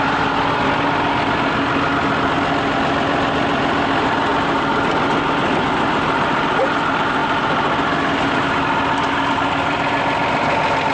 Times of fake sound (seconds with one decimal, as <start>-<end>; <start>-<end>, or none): 0.0-4.3; 4.9-7.2; 9.3-10.9